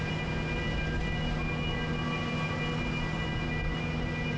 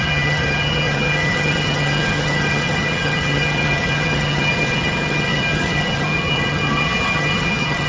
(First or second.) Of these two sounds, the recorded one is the first